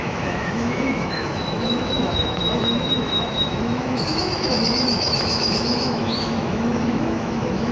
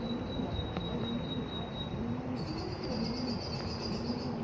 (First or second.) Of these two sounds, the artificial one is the first